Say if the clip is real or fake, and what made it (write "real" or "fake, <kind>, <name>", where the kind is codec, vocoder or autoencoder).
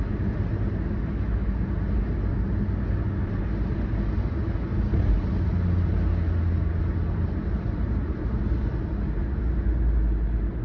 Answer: real